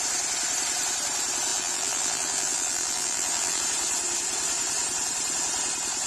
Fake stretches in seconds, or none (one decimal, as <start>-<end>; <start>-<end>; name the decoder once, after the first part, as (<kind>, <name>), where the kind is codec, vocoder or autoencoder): 1.5-3.6 (vocoder, BigVGAN v2)